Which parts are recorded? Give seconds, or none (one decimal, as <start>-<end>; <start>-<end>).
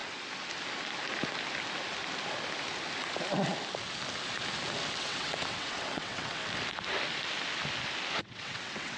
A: 0.0-5.0; 6.4-8.2